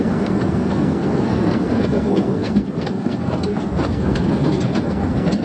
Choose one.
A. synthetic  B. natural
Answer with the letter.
A